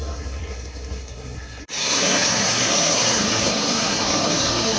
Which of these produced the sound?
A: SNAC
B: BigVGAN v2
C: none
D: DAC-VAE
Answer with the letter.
A